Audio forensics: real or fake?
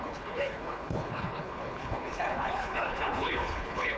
fake